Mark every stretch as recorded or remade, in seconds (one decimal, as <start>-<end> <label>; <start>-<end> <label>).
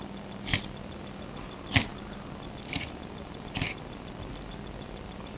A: 0.0-5.4 recorded